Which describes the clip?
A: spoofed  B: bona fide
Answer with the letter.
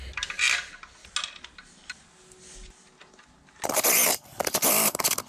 B